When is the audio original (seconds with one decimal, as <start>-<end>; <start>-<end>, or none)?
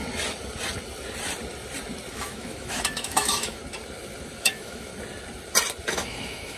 0.0-2.1; 3.6-4.4; 4.9-5.9